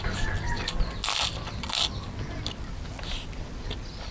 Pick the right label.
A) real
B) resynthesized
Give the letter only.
A